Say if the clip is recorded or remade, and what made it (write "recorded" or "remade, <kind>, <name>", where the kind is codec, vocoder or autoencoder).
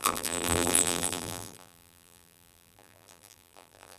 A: remade, vocoder, BigVGAN v2